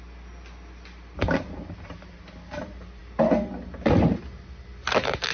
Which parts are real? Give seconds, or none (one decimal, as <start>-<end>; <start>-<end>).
0.0-5.3